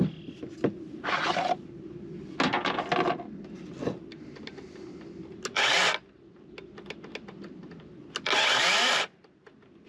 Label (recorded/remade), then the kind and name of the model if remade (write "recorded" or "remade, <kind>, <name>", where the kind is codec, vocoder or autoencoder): recorded